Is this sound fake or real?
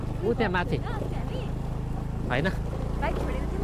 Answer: real